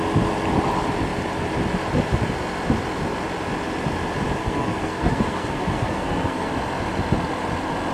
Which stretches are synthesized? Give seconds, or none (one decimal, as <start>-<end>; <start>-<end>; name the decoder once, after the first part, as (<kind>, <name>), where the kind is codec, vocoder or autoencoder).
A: 4.4-6.5 (codec, SNAC)